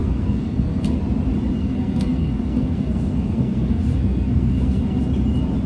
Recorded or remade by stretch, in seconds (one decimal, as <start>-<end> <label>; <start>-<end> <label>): 0.0-1.0 remade; 1.0-1.6 recorded; 1.6-5.0 remade; 5.0-5.7 recorded